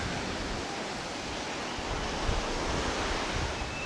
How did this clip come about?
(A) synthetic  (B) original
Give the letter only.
B